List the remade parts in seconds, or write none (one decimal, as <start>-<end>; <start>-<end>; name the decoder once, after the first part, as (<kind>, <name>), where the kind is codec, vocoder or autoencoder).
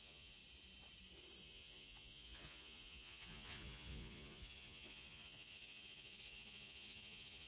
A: 0.0-0.4 (vocoder, Vocos); 1.4-7.5